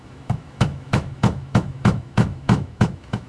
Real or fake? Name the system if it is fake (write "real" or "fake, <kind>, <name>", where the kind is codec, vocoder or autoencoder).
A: fake, autoencoder, DAC-VAE